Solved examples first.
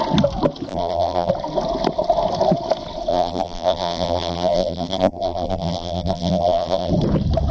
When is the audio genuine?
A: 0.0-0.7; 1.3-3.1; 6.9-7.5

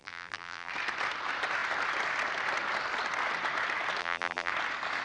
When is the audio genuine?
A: 0.7-4.0; 4.5-5.0

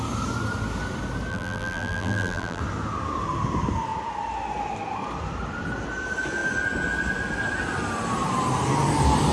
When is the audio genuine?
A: 0.0-1.3; 2.6-9.3

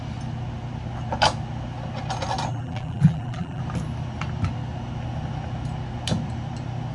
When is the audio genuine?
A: 0.0-2.5; 3.6-6.9

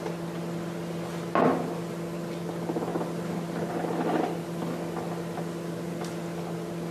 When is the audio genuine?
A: 0.0-6.9

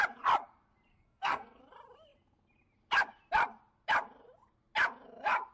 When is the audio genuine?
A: 0.0-0.9; 1.6-5.5